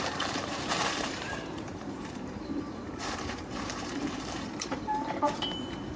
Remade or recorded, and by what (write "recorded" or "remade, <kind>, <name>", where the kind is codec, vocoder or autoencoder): remade, vocoder, BigVGAN v2